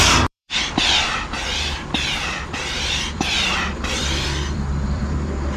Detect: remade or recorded remade